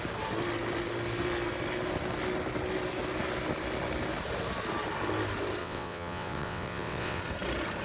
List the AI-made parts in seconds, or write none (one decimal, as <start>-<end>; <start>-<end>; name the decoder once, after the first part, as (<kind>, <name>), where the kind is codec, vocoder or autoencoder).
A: 5.6-7.2 (vocoder, WaveNeXt)